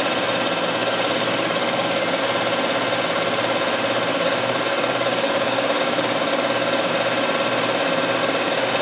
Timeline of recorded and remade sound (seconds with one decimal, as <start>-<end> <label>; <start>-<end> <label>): 0.0-0.8 recorded; 0.8-2.2 remade; 2.2-4.1 recorded; 4.1-6.9 remade; 6.9-8.2 recorded; 8.2-8.8 remade